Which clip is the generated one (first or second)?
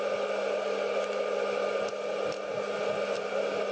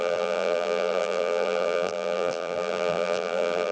second